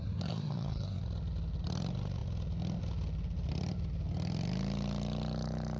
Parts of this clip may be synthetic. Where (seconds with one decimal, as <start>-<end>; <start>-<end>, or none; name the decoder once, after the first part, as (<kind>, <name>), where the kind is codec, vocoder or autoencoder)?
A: 0.0-1.0 (codec, SNAC)